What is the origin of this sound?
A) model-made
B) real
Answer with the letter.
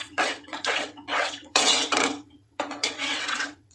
A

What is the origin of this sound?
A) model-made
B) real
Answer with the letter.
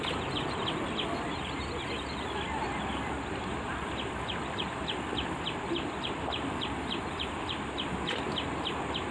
B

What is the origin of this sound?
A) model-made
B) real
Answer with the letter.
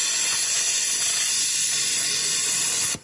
A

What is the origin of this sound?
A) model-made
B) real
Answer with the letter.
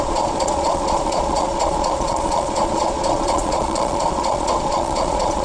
A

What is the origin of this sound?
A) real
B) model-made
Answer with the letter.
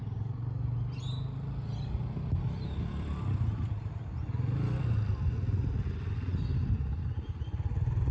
A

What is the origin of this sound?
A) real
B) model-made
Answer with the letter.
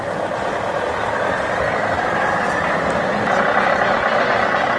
A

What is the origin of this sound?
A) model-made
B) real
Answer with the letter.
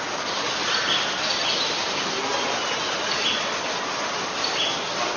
B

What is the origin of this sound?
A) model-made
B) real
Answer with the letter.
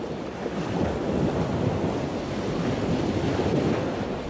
B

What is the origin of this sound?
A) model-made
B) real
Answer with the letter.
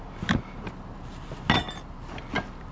B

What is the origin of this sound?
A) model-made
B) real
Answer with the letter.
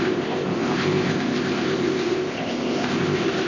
A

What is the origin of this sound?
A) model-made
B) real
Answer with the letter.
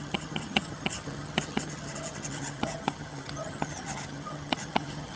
A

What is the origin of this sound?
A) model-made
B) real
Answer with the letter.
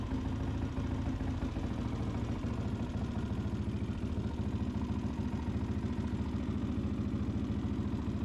B